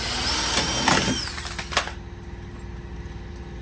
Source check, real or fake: real